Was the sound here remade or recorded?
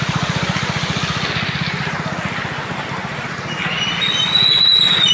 recorded